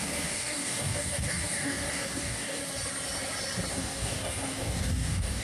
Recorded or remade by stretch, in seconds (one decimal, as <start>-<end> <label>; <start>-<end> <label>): 0.0-2.6 remade; 2.6-3.7 recorded; 3.7-5.4 remade